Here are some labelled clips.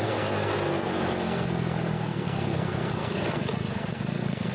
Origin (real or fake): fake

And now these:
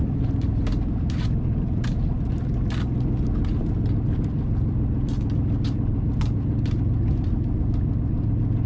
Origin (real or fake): real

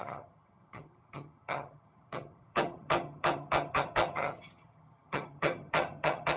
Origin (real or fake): fake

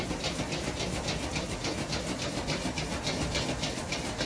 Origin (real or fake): real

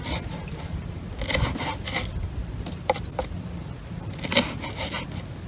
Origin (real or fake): real